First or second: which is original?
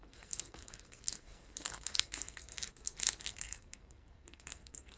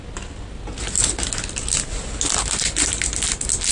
second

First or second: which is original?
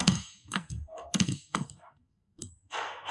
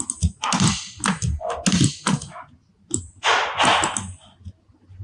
second